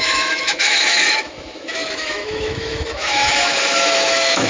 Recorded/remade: remade